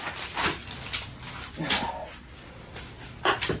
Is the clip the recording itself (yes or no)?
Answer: yes